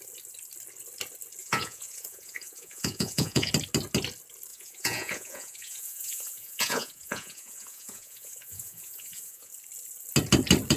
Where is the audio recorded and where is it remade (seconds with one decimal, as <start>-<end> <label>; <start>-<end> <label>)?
0.0-1.4 recorded; 1.4-3.5 remade; 3.5-4.5 recorded; 4.5-9.5 remade; 9.5-10.8 recorded